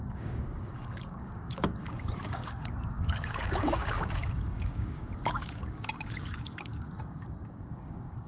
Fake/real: fake